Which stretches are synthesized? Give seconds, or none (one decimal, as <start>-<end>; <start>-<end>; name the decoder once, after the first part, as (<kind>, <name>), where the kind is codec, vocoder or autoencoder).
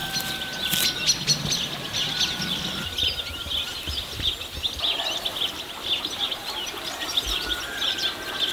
6.4-7.6 (vocoder, BigVGAN v2)